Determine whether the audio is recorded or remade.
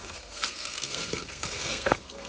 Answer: remade